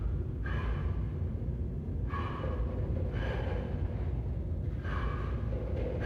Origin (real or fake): real